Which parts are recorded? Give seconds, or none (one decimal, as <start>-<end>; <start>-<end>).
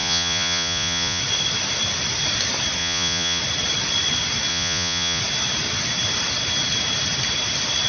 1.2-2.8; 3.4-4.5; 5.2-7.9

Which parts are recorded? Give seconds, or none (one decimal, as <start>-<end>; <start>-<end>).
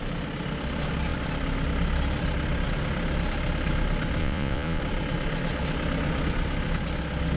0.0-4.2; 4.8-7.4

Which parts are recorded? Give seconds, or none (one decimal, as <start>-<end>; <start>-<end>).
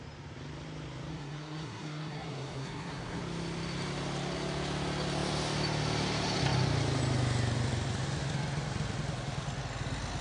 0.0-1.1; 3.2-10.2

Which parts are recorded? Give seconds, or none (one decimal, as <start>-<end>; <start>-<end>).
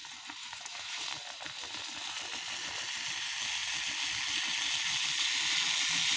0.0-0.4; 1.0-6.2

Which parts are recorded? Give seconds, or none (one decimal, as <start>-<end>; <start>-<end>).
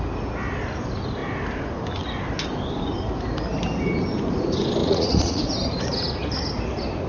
0.0-4.8; 5.5-7.1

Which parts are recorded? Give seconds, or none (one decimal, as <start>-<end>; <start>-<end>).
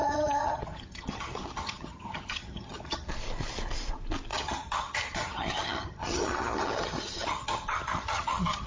3.1-4.3